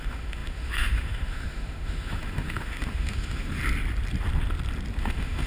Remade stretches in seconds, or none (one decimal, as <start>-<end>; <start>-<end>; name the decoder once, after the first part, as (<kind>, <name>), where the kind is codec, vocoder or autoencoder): 0.0-3.6 (autoencoder, DAC-VAE); 5.0-5.5